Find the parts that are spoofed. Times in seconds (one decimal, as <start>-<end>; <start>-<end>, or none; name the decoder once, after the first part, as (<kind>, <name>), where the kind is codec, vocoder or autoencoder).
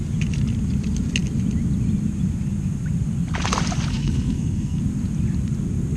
3.9-4.8 (codec, SNAC)